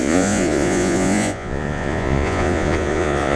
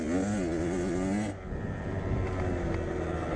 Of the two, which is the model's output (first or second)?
first